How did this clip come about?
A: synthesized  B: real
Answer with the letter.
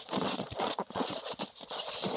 A